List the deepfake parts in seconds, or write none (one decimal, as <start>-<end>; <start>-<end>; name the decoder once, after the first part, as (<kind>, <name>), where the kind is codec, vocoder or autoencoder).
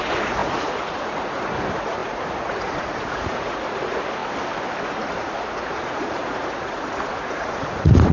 0.0-4.2 (vocoder, Vocos); 4.8-8.1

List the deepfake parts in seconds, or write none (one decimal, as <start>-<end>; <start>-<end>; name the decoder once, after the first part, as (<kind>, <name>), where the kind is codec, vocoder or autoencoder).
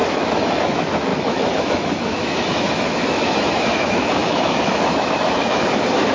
0.0-6.1 (autoencoder, DAC-VAE)